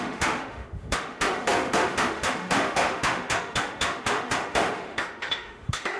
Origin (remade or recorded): remade